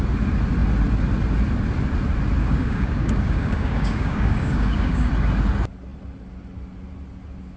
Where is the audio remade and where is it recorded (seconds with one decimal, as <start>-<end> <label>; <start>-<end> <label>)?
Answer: 0.0-2.4 recorded; 2.4-5.1 remade; 5.1-7.6 recorded